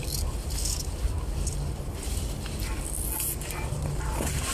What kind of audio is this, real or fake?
real